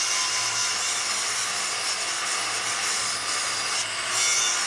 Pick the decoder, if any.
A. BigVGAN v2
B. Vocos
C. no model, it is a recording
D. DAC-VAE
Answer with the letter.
C